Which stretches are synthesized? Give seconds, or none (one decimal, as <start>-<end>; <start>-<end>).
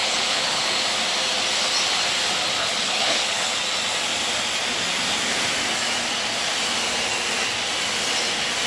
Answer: 0.0-0.7; 2.6-3.6